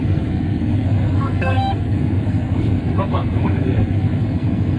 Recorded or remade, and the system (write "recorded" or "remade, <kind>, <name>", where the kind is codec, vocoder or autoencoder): remade, codec, SNAC